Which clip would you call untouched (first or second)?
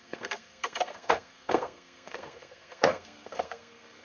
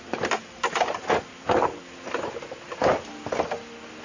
second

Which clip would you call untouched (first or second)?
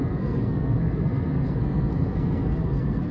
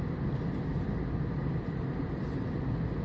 second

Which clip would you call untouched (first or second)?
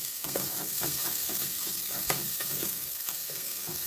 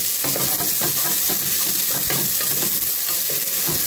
second